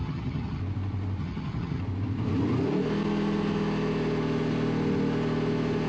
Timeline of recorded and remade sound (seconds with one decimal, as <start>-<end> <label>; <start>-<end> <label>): 0.0-0.6 remade; 0.6-1.2 recorded; 1.2-1.8 remade; 1.8-5.9 recorded